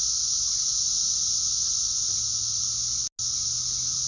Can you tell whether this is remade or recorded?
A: recorded